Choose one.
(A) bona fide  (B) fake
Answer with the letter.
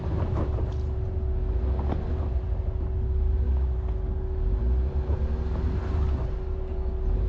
A